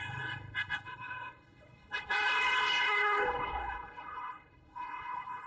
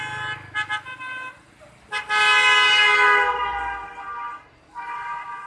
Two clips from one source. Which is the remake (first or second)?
first